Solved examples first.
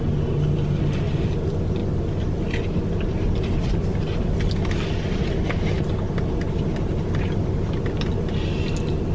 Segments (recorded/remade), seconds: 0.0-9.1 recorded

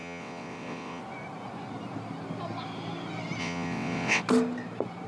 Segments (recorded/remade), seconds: 0.0-1.0 remade; 1.0-3.4 recorded; 3.4-4.2 remade; 4.2-5.1 recorded

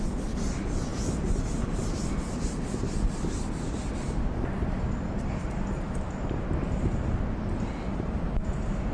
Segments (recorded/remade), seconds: 0.0-8.9 recorded

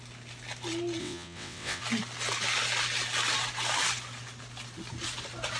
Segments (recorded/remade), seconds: 0.0-1.0 recorded; 1.0-1.8 remade; 1.8-5.6 recorded

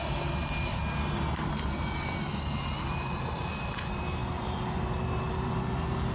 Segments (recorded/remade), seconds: 0.0-6.1 recorded